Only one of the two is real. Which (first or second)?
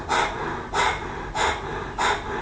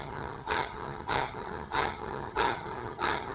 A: first